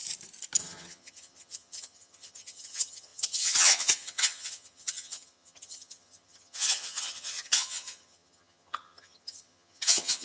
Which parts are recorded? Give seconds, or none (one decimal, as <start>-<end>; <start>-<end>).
0.0-0.6